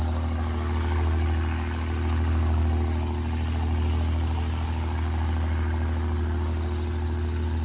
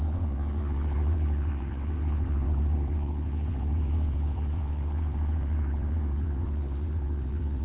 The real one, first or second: first